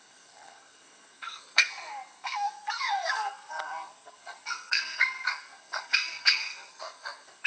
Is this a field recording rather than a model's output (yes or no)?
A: no